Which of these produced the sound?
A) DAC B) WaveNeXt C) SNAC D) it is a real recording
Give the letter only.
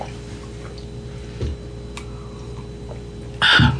D